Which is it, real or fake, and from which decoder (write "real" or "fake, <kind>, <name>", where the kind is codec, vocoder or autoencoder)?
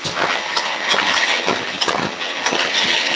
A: fake, vocoder, HiFi-GAN